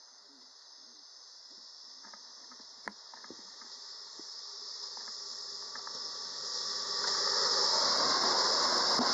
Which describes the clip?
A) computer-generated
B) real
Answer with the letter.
B